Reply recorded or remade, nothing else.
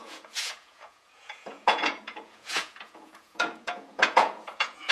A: remade